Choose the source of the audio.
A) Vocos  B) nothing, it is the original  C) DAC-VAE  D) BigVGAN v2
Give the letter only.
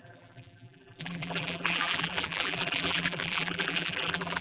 D